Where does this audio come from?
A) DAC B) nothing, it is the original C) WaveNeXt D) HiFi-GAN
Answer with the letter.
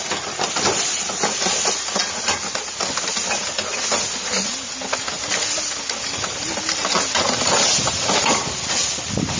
B